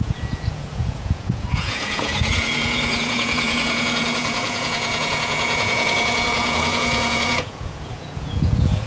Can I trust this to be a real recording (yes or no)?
no